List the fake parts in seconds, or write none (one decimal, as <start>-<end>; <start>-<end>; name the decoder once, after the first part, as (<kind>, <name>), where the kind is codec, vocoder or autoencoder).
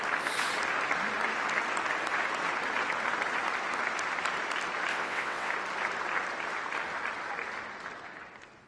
4.9-5.5 (vocoder, WaveNeXt)